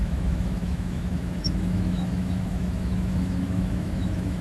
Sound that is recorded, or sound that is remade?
remade